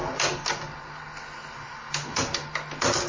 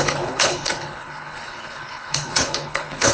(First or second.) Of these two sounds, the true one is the first